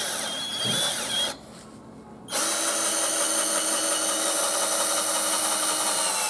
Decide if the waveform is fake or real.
real